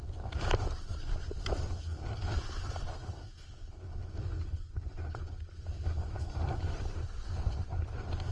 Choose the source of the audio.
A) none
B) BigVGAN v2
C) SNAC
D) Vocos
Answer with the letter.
A